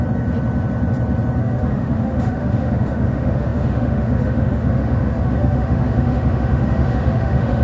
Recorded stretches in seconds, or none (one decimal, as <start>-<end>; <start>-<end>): 0.0-1.4